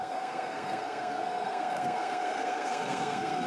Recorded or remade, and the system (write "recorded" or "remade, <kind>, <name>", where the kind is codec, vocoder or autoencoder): remade, codec, SNAC